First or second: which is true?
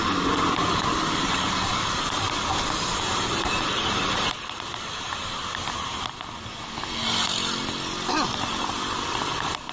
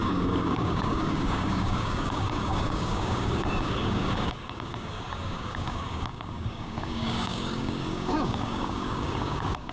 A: first